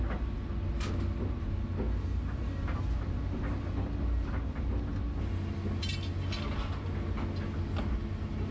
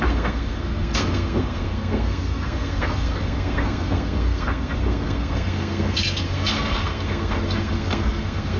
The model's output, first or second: second